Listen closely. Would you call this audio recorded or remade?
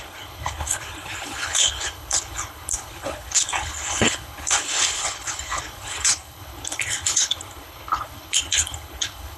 remade